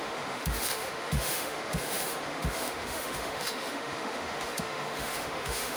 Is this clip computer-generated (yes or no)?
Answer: yes